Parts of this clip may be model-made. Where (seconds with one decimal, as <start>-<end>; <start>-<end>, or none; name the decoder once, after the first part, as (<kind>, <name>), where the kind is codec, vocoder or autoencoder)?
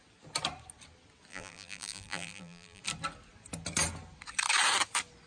1.3-2.8 (vocoder, BigVGAN v2)